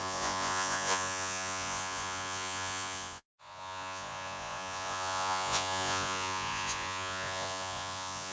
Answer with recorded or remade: remade